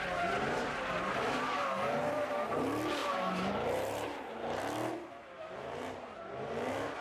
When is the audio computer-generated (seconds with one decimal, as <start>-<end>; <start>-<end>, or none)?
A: 3.0-4.6